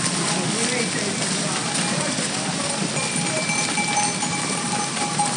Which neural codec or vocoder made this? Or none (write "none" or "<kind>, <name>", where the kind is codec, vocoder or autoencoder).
none